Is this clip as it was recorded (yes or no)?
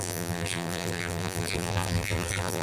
no